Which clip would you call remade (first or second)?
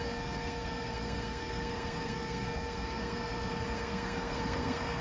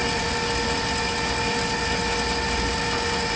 first